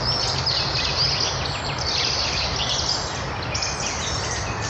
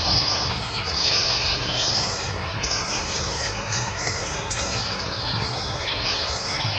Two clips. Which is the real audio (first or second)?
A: first